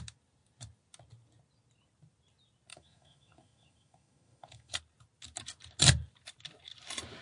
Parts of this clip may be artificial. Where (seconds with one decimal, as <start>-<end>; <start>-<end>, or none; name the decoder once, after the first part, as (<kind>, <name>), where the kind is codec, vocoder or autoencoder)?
2.7-4.8 (autoencoder, DAC-VAE)